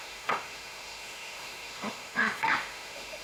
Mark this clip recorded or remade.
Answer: remade